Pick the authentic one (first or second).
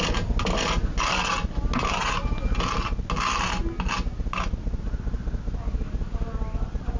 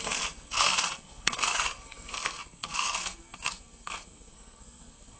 first